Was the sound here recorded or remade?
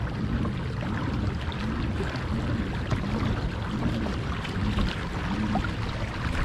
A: recorded